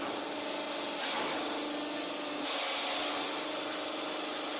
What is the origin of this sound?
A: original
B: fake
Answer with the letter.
A